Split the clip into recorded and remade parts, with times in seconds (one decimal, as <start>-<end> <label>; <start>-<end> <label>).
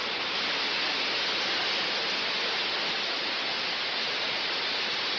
0.0-5.2 recorded